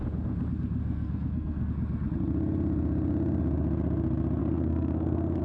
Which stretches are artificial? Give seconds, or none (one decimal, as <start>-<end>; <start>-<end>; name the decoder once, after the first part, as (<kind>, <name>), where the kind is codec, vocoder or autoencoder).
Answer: 0.8-1.7 (codec, SNAC); 4.4-5.4